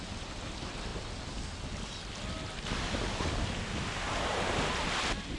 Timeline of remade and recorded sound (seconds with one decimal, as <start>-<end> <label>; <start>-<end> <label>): 0.0-5.4 recorded